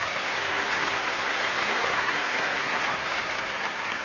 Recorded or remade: remade